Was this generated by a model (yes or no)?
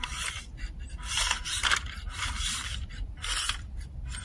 no